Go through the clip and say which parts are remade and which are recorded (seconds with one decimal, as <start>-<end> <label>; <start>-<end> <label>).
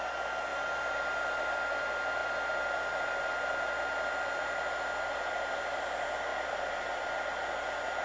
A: 0.0-8.0 recorded